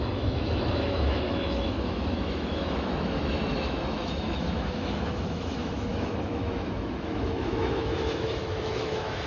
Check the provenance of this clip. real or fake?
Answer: fake